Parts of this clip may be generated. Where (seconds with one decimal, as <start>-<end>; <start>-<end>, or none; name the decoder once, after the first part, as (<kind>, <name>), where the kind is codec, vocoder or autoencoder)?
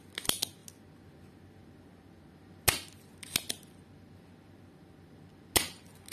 none